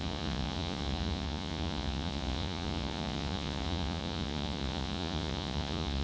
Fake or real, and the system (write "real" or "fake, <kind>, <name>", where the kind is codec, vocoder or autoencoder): fake, vocoder, Vocos